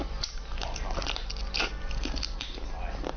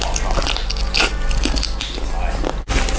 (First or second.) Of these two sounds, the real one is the second